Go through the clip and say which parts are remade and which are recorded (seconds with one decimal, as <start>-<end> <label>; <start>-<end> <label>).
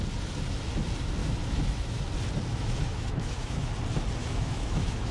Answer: 0.0-1.2 recorded; 1.2-2.0 remade; 2.0-2.5 recorded; 2.5-3.7 remade; 3.7-4.2 recorded; 4.2-5.1 remade